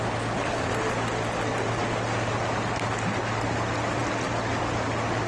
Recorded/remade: recorded